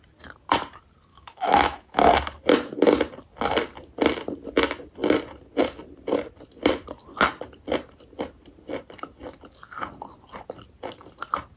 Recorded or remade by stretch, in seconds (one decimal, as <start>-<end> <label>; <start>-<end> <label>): 0.0-1.1 recorded; 1.1-2.1 remade; 2.1-11.6 recorded